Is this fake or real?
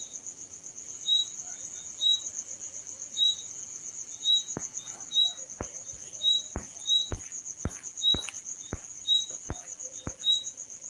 fake